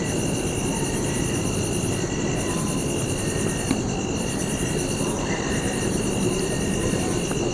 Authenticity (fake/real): real